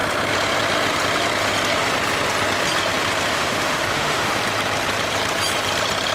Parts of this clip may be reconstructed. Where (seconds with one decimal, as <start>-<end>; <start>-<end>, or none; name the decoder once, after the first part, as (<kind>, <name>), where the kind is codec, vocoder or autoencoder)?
3.3-4.4 (autoencoder, DAC-VAE)

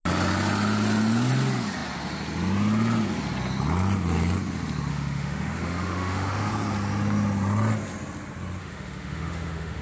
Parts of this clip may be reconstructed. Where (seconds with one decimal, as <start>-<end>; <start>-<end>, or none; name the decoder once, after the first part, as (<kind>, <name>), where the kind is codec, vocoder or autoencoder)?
4.9-6.5 (autoencoder, DAC-VAE); 8.6-9.8

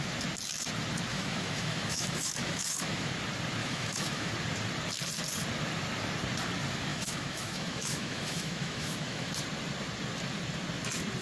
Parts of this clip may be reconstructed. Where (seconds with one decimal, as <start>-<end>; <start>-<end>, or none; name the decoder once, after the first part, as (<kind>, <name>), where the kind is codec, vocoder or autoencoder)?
1.1-3.1 (autoencoder, DAC-VAE); 3.6-4.3; 6.9-9.3

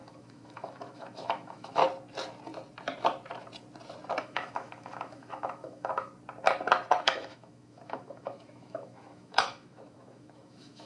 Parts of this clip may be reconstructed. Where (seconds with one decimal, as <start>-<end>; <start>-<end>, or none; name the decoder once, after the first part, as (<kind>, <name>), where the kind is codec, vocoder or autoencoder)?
0.0-1.8 (autoencoder, DAC-VAE); 4.2-6.1; 7.0-10.9